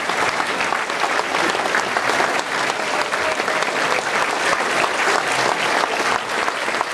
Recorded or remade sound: recorded